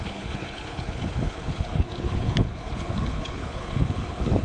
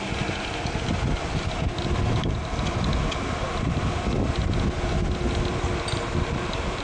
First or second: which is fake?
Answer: first